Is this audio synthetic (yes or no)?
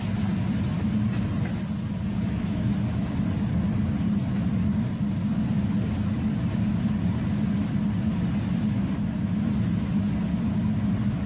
no